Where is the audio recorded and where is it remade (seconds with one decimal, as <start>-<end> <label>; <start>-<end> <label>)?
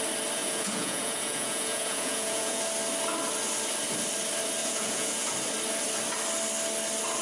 0.0-0.4 recorded; 0.4-2.6 remade; 2.6-4.6 recorded; 4.6-5.3 remade; 5.3-7.2 recorded